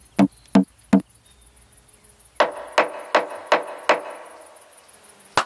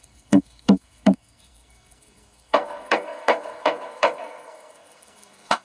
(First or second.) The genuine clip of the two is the first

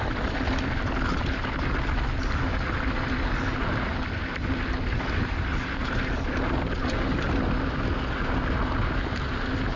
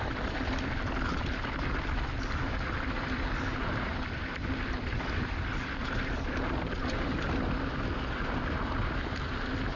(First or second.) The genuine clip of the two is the first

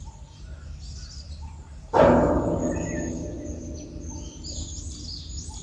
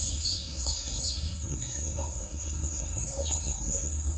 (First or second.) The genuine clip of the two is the first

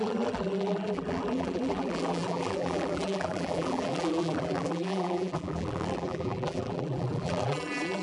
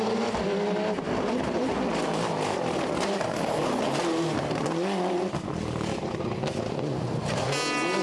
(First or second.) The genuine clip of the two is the second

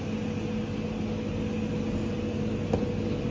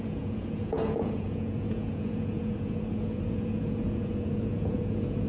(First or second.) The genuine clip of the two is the first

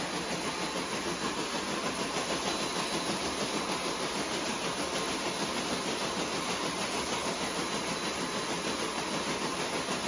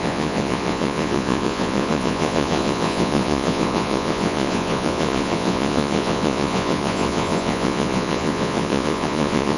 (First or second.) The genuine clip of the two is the first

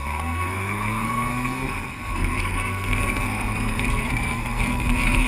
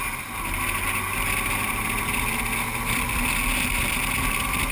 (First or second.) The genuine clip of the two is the second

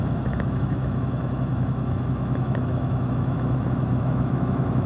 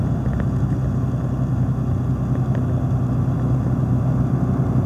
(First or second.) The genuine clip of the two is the second